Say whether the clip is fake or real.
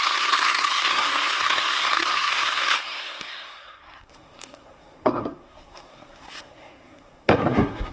fake